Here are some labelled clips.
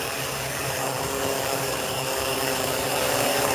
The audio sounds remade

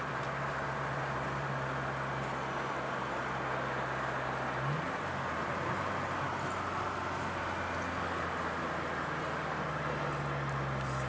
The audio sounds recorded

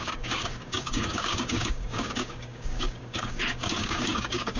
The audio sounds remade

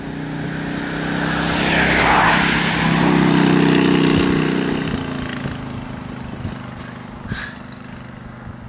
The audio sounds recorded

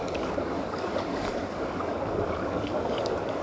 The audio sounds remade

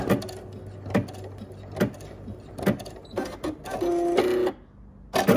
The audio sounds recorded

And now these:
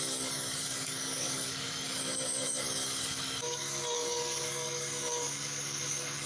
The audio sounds remade